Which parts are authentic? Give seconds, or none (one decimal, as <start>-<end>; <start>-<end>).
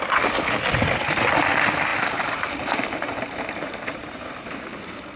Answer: 0.0-1.9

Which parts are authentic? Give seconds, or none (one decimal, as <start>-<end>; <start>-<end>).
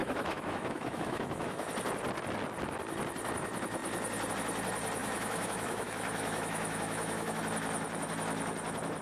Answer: 1.7-5.0; 7.4-9.0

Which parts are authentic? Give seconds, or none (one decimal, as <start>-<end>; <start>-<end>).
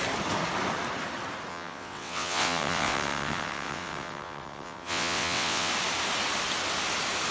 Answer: 0.0-1.5; 5.7-7.3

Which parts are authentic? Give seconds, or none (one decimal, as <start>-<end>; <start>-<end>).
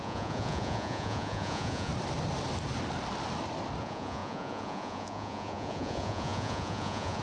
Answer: 1.9-3.8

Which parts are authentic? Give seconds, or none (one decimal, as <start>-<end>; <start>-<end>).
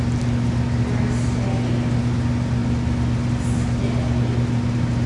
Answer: 0.0-5.1